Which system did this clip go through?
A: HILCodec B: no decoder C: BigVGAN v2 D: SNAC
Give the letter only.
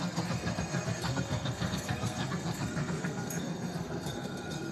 D